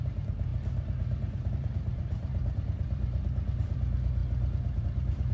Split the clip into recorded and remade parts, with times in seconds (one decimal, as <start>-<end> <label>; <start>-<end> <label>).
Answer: 0.0-0.5 remade; 0.5-1.5 recorded; 1.5-4.2 remade; 4.2-4.8 recorded; 4.8-5.3 remade